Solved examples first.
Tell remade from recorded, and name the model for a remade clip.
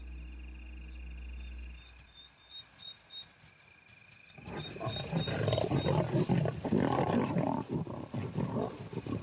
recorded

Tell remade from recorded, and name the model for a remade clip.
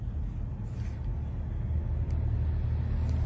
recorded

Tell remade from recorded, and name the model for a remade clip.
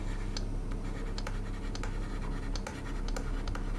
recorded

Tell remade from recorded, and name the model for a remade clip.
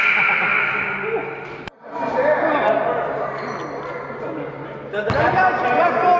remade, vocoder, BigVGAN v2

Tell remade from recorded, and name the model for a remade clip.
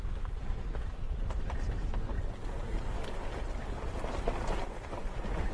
recorded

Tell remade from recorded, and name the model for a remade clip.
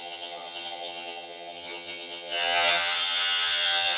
remade, vocoder, HiFi-GAN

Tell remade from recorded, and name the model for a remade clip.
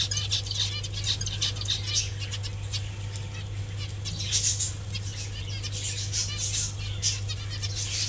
recorded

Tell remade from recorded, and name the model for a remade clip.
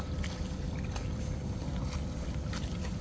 recorded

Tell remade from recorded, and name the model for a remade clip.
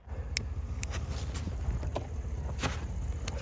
recorded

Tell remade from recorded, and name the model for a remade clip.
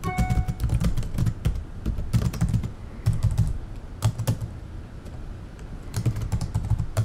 recorded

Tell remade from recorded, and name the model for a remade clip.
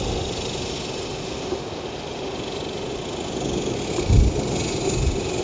recorded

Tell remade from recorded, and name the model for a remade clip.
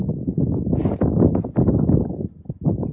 recorded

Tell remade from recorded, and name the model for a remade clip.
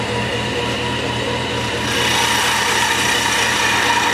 remade, vocoder, BigVGAN v2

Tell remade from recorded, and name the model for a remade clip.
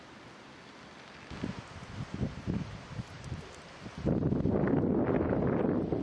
recorded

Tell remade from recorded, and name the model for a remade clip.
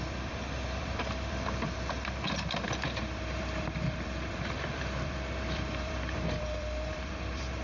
remade, vocoder, BigVGAN v2